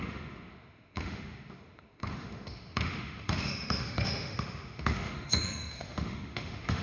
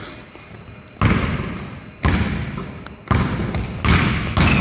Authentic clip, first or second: second